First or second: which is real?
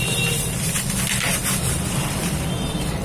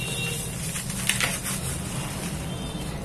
second